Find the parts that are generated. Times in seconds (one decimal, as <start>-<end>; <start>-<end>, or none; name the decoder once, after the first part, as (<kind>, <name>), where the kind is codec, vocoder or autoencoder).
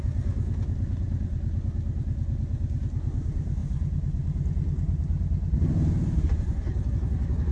3.6-6.9 (vocoder, BigVGAN v2)